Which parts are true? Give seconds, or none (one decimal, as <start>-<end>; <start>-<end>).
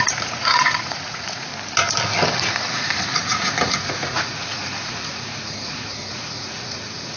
1.5-2.5